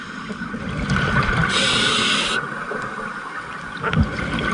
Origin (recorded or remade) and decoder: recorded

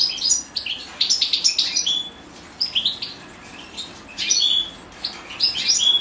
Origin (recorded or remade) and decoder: recorded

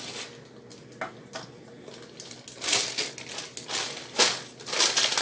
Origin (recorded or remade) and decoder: recorded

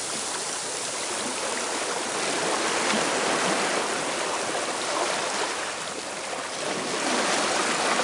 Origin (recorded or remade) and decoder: recorded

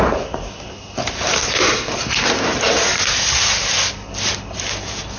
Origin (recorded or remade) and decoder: recorded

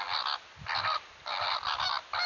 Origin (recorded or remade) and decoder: recorded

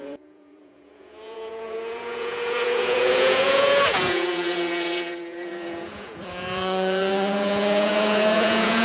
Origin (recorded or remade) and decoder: remade, vocoder, Vocos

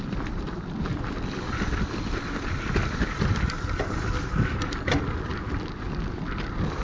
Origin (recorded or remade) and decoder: recorded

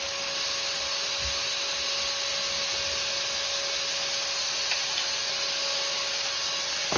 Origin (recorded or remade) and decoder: recorded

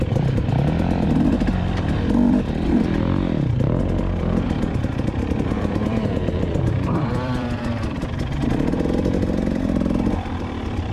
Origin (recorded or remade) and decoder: remade, vocoder, BigVGAN v2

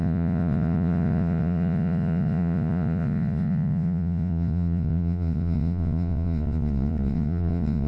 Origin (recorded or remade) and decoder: remade, vocoder, Vocos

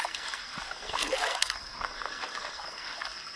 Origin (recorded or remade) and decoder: remade, codec, SNAC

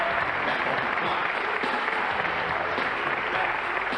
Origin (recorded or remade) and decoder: recorded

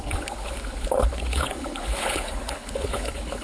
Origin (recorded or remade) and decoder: remade, codec, HILCodec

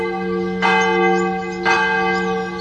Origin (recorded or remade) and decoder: recorded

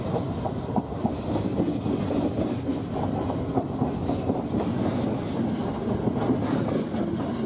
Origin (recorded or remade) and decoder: recorded